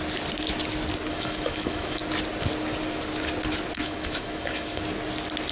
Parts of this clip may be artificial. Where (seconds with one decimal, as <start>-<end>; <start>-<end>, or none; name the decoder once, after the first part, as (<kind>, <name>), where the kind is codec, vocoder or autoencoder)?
1.1-2.0 (autoencoder, DAC-VAE); 3.8-4.8